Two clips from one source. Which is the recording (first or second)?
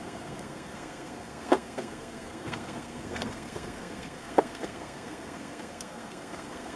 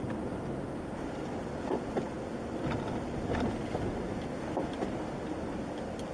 second